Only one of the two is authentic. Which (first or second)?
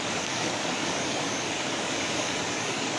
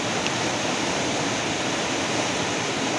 second